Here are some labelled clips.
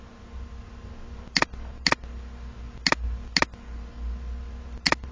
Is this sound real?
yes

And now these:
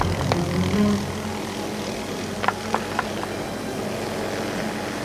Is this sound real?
yes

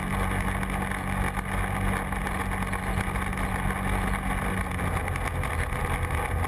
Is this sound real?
yes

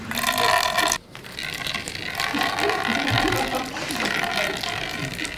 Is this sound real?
yes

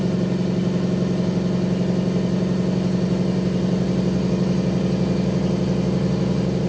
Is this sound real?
yes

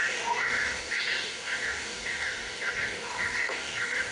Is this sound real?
no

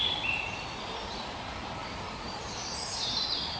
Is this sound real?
yes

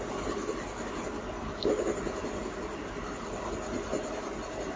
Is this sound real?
yes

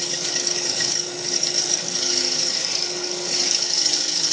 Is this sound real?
no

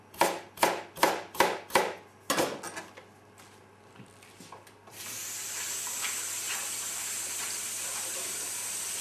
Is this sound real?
yes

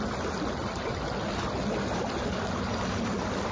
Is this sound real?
yes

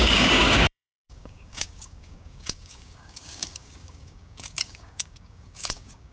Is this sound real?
no